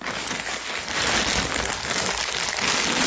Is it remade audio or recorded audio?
recorded